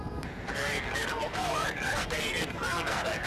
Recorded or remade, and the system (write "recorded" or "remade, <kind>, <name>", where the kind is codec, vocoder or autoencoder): remade, codec, SNAC